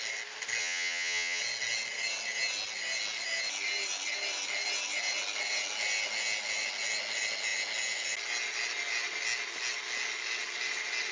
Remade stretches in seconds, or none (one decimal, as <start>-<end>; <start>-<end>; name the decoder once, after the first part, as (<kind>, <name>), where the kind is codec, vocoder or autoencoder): 0.6-1.4 (vocoder, HiFi-GAN)